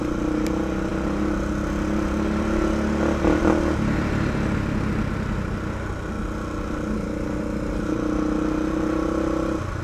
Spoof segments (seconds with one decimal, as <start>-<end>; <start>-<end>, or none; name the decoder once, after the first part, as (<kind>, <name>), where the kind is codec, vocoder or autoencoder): none